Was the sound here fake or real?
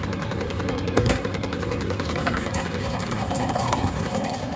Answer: fake